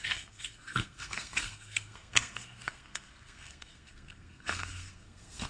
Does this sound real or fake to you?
fake